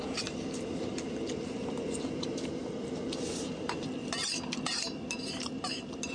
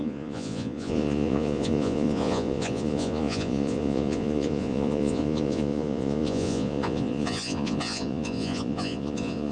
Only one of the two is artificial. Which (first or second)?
second